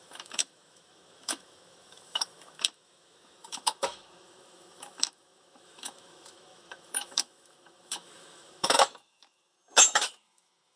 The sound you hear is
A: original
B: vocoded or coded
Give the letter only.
B